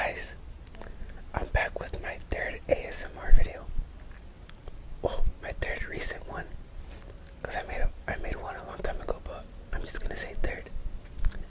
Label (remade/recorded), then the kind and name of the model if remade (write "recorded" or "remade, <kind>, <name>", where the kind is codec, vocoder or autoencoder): recorded